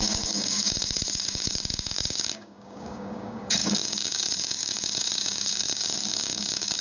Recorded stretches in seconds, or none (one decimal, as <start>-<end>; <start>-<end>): none